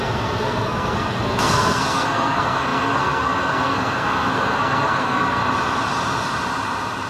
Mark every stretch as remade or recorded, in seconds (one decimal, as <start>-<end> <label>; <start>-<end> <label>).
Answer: 0.0-5.4 remade; 5.4-7.1 recorded